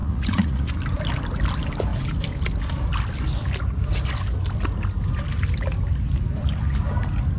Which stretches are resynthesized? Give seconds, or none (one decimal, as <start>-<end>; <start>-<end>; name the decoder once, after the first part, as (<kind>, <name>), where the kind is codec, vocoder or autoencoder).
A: 0.0-0.7 (vocoder, Vocos)